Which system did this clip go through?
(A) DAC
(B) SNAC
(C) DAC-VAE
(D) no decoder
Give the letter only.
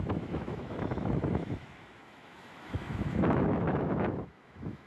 C